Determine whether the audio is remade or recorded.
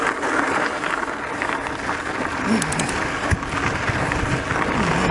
recorded